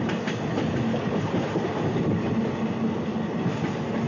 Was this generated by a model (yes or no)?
no